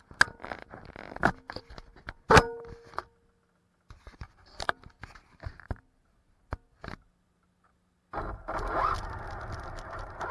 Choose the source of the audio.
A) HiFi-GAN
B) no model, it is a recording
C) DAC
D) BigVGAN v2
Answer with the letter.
B